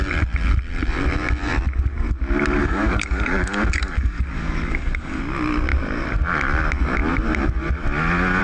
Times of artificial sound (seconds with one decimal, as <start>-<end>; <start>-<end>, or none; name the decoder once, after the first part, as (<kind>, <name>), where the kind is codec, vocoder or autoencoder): 2.6-5.2 (codec, DAC)

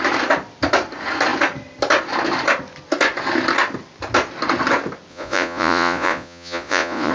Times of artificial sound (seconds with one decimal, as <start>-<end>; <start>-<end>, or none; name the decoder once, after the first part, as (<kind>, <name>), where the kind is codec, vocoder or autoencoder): 5.1-7.1 (vocoder, Vocos)

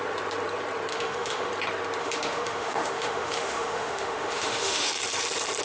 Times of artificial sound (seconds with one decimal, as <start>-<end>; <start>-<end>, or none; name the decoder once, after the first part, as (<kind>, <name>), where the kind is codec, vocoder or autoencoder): 0.9-1.5 (autoencoder, DAC-VAE); 2.0-4.9

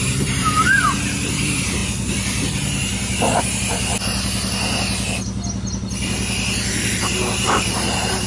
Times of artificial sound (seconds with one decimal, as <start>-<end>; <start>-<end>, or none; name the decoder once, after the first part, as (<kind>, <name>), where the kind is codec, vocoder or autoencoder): 0.0-1.8 (vocoder, BigVGAN v2); 3.4-3.9; 6.9-8.3

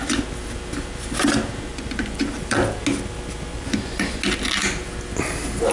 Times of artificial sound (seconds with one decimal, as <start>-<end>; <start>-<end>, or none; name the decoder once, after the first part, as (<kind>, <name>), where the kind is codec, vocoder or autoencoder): 1.7-2.3 (vocoder, Vocos); 3.5-4.2

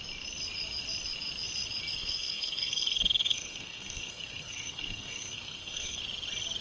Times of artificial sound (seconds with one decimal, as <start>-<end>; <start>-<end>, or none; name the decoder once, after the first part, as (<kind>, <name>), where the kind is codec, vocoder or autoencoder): 2.0-6.0 (codec, SNAC)

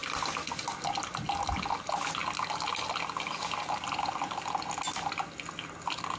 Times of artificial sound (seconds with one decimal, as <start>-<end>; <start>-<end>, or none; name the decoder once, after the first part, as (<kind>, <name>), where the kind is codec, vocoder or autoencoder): none

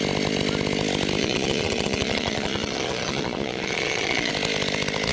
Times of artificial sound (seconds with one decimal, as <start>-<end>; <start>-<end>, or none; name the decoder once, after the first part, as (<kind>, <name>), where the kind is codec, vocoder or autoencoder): 1.2-4.3 (vocoder, Vocos)